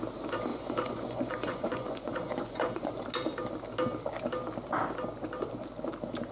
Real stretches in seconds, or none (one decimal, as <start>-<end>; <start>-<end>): 0.0-0.5; 2.9-6.3

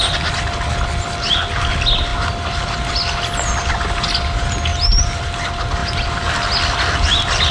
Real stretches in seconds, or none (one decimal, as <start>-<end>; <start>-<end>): 0.0-4.7; 5.2-7.5

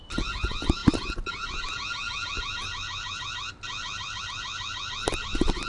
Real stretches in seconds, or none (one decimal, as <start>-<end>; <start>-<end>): 0.0-5.7